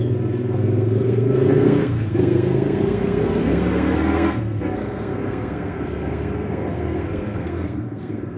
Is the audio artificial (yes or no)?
yes